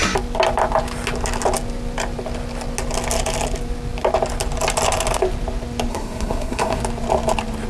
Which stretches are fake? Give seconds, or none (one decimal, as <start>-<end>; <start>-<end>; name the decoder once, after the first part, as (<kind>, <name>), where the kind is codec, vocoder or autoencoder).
5.9-6.8 (codec, SNAC)